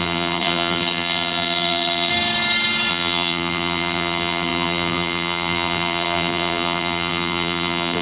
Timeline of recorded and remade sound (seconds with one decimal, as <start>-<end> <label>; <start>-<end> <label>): 0.0-2.1 remade; 2.1-2.9 recorded; 2.9-8.0 remade